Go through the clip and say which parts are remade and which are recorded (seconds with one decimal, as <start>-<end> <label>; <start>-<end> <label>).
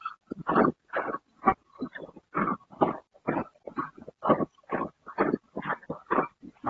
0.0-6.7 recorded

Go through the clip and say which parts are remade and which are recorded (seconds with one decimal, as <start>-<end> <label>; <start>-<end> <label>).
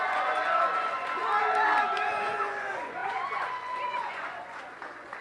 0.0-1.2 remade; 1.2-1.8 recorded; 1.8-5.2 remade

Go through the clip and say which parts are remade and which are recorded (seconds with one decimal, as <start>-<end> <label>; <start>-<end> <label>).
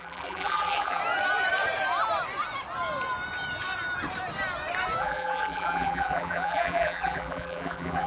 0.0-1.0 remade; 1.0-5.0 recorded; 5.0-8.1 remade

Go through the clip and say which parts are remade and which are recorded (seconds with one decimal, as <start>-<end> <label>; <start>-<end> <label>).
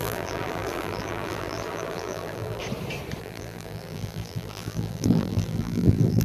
0.0-2.6 remade; 2.6-3.2 recorded; 3.2-6.2 remade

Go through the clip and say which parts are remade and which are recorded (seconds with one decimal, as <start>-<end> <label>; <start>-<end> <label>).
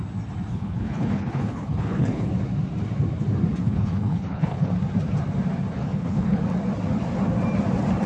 0.0-0.5 recorded; 0.5-2.3 remade; 2.3-3.6 recorded; 3.6-4.7 remade; 4.7-5.8 recorded; 5.8-6.4 remade; 6.4-8.1 recorded